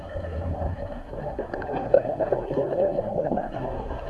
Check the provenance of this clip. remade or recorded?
remade